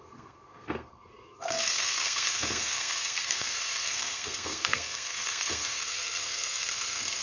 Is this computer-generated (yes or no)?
yes